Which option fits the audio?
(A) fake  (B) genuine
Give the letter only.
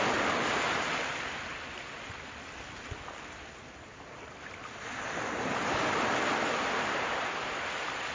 B